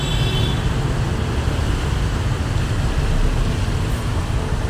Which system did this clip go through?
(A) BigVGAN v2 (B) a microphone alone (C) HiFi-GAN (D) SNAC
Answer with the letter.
B